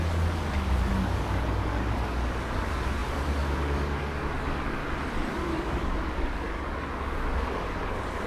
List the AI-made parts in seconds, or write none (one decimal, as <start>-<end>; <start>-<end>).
0.0-4.8; 5.3-8.3

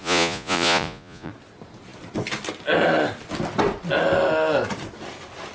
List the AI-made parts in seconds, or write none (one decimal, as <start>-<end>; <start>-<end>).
0.0-1.3

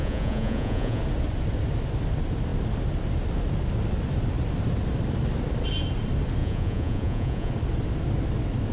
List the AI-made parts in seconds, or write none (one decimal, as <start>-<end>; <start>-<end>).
0.0-1.0; 6.4-7.5